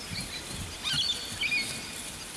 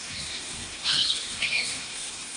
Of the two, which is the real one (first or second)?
first